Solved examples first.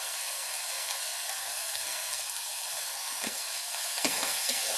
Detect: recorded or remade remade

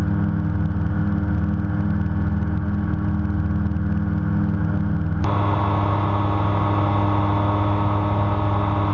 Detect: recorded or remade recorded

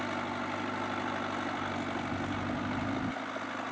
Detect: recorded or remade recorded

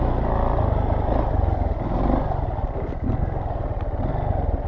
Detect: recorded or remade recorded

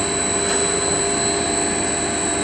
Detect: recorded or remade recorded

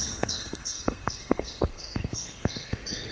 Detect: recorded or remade remade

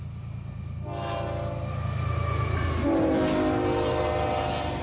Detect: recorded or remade recorded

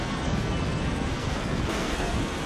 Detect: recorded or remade remade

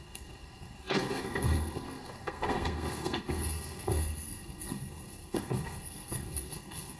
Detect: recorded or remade remade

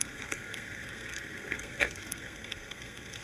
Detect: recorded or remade remade